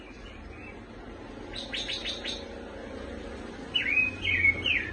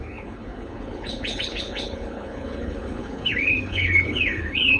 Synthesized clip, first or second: second